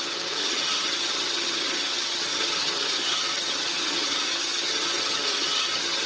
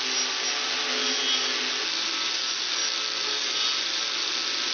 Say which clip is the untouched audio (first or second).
second